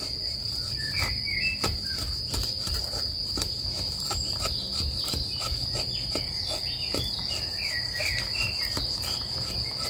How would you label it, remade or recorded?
recorded